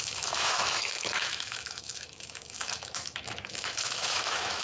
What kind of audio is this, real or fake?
fake